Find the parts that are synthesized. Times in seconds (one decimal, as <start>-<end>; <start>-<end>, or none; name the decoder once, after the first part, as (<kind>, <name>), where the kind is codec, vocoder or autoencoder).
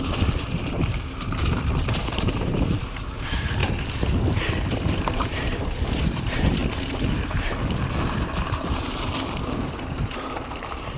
0.0-3.6 (vocoder, BigVGAN v2); 4.5-6.6; 9.5-11.0